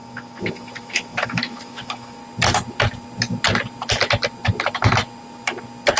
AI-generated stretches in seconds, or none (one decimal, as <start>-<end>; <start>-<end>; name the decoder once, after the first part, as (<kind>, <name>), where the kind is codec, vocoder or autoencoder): 0.0-2.2 (autoencoder, DAC-VAE)